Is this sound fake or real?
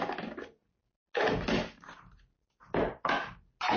real